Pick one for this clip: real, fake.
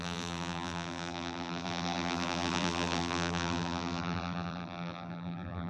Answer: fake